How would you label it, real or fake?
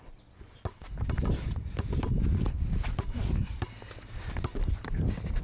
real